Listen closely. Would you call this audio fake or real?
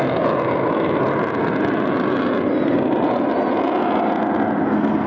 real